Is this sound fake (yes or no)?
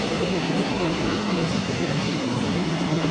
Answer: yes